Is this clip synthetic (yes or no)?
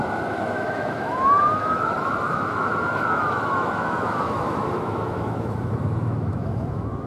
yes